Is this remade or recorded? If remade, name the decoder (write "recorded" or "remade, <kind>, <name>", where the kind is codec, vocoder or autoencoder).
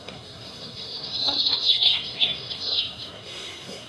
remade, codec, SNAC